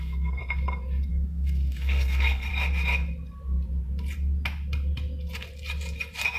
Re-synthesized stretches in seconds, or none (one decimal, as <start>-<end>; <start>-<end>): 0.0-0.4; 1.1-2.5